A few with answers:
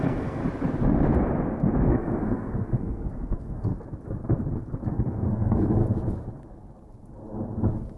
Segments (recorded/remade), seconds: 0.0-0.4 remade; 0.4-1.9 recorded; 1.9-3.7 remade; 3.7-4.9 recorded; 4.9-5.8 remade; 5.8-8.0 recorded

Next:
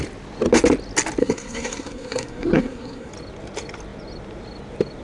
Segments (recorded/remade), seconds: 0.0-1.2 recorded; 1.2-3.1 remade; 3.1-5.0 recorded

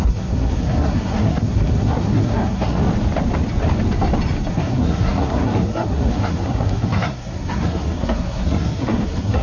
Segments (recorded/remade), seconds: 0.0-2.9 remade; 2.9-4.5 recorded; 4.5-9.4 remade

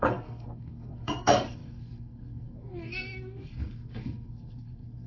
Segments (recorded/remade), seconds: 0.0-5.1 remade